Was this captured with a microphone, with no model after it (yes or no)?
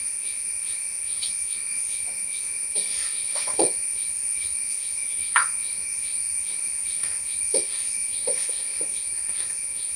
no